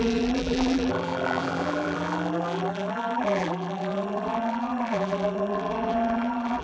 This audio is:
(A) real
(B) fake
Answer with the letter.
B